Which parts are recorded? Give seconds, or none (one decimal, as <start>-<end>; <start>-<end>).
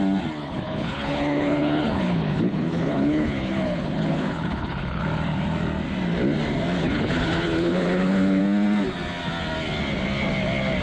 0.0-0.4; 5.0-6.8; 8.4-10.8